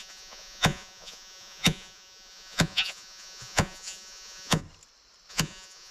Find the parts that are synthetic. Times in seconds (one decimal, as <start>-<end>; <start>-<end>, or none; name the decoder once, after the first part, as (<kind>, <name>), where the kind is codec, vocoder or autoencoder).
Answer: 0.0-4.6 (vocoder, Vocos); 5.3-5.9